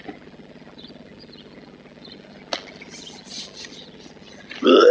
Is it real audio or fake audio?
real